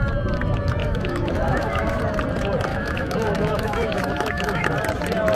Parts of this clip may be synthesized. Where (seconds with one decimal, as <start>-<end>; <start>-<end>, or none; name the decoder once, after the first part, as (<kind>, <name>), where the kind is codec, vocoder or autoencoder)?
0.8-2.0 (autoencoder, DAC-VAE); 2.7-4.7